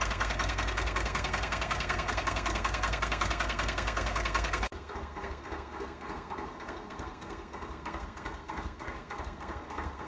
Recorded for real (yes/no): no